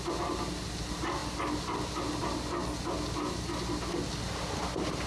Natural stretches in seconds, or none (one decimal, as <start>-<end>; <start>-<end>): 0.0-5.1